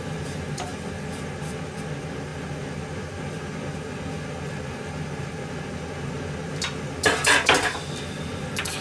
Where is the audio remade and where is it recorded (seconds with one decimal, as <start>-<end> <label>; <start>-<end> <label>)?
0.0-8.8 recorded